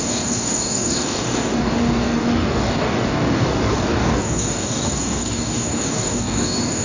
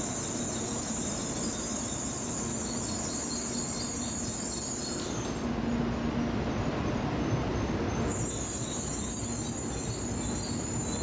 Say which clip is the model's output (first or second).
first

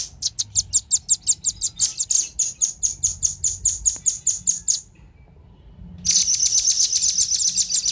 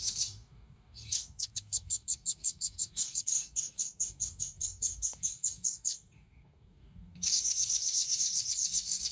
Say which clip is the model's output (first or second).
second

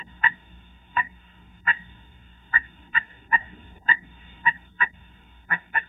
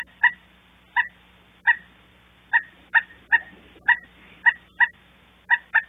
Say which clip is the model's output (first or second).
first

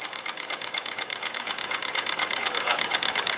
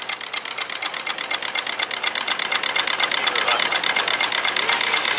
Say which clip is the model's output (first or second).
first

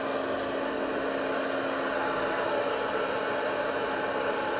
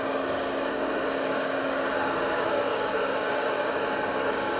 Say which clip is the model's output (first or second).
second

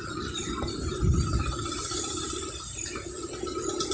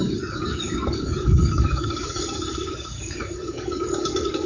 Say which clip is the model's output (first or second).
second